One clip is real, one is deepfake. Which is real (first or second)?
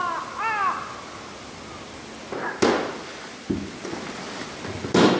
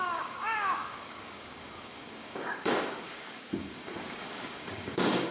first